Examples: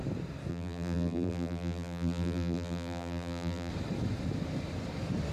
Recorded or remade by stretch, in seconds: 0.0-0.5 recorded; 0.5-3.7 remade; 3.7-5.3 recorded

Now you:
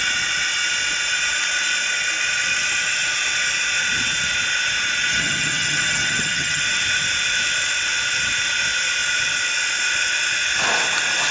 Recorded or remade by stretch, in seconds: 0.0-5.1 recorded; 5.1-6.6 remade; 6.6-11.3 recorded

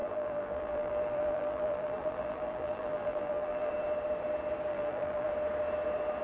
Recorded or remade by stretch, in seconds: 0.0-3.7 remade; 3.7-4.7 recorded; 4.7-5.3 remade; 5.3-6.2 recorded